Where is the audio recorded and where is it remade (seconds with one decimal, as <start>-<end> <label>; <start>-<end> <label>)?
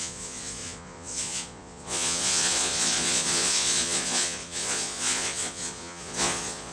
0.0-6.7 remade